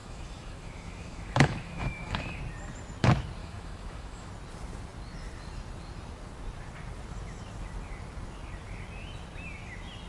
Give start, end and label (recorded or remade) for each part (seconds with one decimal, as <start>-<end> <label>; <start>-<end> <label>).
0.0-2.4 remade; 2.4-3.4 recorded; 3.4-4.3 remade; 4.3-10.1 recorded